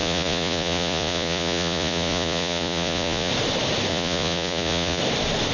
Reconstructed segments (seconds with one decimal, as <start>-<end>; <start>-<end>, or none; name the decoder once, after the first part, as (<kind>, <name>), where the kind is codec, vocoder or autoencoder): 0.0-3.3 (vocoder, Vocos); 3.9-5.0

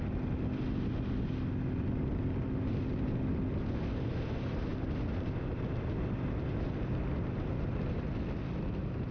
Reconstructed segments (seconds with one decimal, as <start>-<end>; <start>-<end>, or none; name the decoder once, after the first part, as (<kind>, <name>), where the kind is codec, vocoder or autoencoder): none

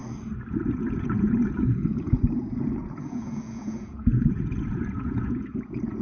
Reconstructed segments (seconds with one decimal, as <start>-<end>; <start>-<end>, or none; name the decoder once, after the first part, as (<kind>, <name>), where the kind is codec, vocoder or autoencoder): 0.5-6.0 (vocoder, Vocos)